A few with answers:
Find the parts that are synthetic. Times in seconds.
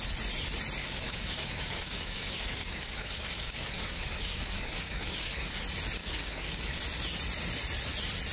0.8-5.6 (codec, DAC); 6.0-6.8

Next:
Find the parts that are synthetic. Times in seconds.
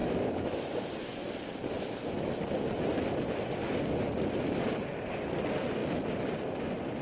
0.0-0.7 (codec, DAC)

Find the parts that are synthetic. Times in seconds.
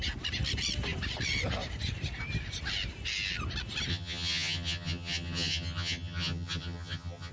3.9-7.3 (vocoder, HiFi-GAN)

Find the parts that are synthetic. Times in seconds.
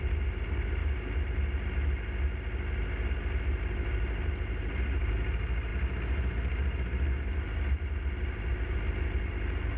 none